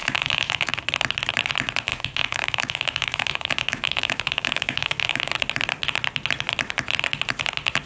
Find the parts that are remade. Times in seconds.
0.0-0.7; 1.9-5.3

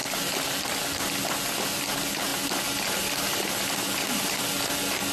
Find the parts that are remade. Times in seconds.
none

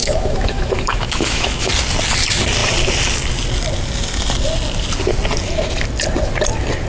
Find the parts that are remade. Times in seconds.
0.0-1.7

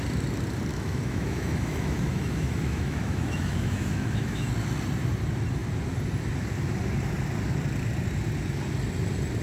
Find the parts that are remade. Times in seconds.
0.7-4.5

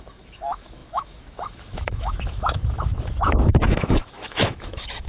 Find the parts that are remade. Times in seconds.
0.0-5.1

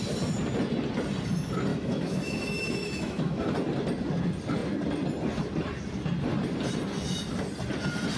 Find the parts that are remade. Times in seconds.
1.7-3.4

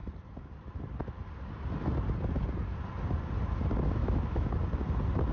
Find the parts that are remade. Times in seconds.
4.0-4.5

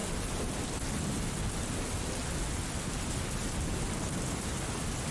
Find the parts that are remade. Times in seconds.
none